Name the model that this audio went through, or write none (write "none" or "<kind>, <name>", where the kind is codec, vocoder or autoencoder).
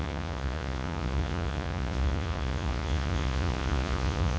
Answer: vocoder, Vocos